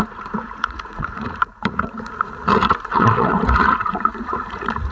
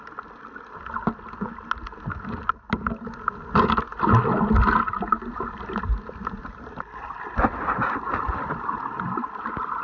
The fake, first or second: first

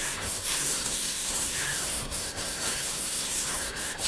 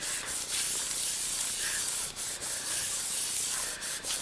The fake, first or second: first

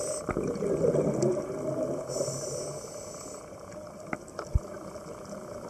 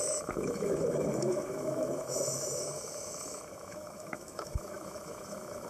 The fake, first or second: second